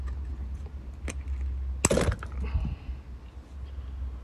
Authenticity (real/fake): real